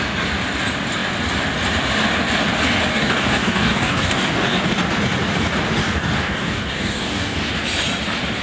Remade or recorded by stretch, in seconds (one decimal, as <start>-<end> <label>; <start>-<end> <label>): 0.0-2.9 recorded; 2.9-4.6 remade; 4.6-5.8 recorded; 5.8-7.5 remade; 7.5-8.4 recorded